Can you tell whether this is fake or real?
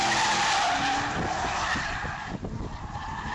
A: real